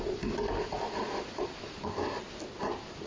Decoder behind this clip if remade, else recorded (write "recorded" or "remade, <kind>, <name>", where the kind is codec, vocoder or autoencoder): recorded